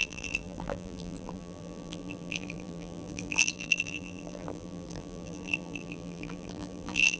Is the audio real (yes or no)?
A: no